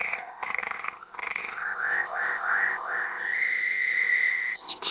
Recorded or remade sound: remade